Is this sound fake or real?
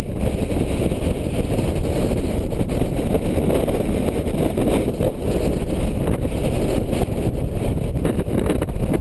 real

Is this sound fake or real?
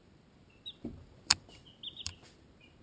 fake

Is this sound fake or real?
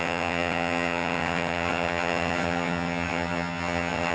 fake